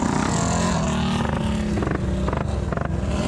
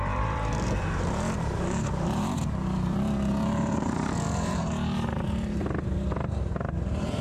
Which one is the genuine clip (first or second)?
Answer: first